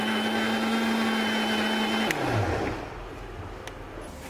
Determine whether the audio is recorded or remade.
recorded